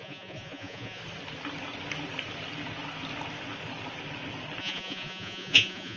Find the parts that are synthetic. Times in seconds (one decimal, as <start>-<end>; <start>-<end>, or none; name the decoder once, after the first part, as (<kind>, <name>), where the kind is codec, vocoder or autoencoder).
0.0-1.0 (vocoder, Vocos); 4.6-6.0